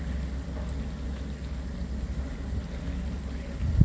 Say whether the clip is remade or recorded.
recorded